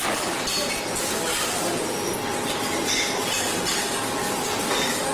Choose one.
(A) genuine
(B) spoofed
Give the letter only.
A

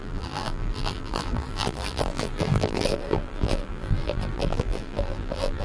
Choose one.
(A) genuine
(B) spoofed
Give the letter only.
B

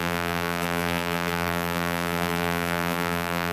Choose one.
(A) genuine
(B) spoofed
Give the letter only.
B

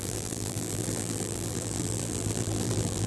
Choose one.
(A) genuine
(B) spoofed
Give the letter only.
B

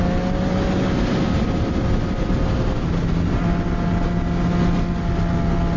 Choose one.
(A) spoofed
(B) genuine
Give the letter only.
B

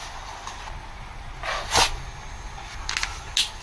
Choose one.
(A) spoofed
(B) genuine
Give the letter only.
B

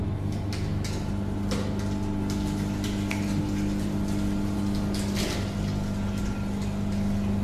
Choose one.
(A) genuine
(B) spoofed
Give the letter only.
A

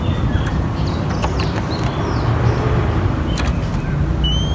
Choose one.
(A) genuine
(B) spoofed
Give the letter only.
A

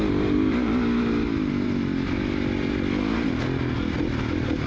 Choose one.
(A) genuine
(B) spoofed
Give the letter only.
A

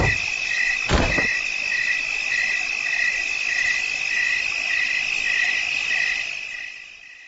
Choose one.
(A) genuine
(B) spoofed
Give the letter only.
B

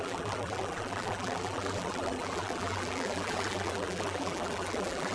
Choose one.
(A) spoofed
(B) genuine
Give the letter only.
A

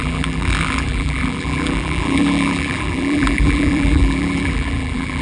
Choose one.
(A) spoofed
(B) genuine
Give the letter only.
A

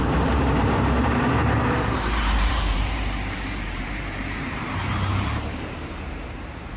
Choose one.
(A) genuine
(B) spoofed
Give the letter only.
B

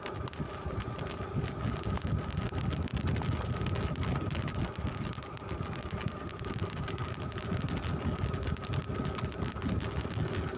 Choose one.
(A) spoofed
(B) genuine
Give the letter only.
B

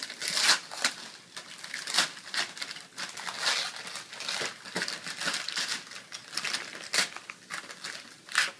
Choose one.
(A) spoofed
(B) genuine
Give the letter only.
B